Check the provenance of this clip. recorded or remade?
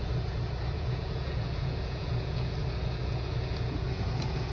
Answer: remade